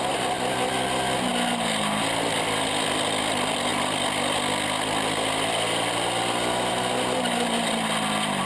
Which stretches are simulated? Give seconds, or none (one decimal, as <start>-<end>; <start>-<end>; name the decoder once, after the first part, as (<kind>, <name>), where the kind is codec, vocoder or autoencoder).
none